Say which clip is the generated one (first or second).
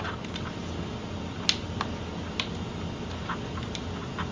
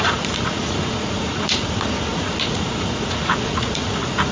second